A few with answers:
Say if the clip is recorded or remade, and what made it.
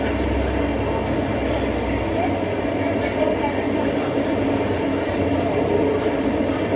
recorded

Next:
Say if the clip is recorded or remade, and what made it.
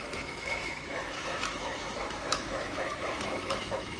remade, autoencoder, DAC-VAE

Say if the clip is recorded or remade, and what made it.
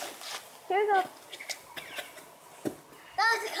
recorded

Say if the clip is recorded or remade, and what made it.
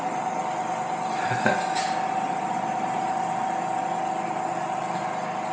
recorded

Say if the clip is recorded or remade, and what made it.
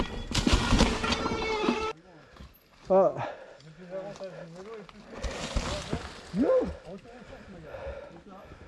recorded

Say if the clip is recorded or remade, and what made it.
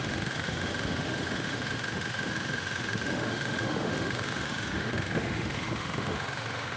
remade, autoencoder, DAC-VAE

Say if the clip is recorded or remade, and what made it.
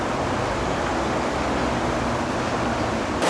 recorded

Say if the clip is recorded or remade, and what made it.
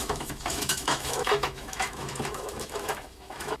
remade, autoencoder, DAC-VAE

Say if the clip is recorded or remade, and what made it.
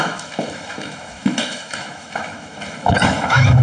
remade, autoencoder, DAC-VAE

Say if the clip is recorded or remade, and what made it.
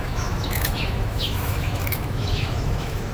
remade, autoencoder, DAC-VAE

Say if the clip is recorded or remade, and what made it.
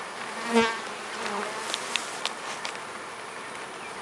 recorded